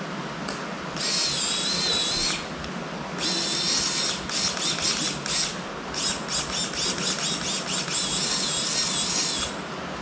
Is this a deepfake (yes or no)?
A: no